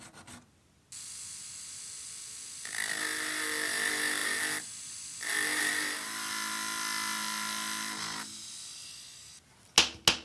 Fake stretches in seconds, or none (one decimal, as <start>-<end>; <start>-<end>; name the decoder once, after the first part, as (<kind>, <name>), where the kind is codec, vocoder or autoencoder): none